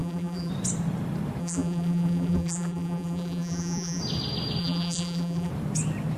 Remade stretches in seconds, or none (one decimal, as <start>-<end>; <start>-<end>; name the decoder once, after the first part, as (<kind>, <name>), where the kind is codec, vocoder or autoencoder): 0.0-0.5 (vocoder, BigVGAN v2); 1.4-4.0; 4.6-5.5